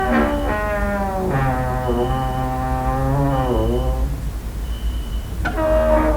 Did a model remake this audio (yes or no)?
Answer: no